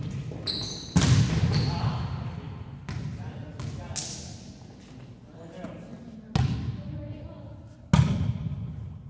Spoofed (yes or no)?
no